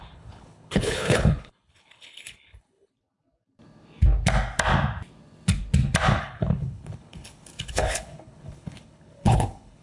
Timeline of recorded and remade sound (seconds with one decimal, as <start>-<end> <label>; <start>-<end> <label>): 0.0-2.9 remade; 2.9-6.2 recorded; 6.2-9.8 remade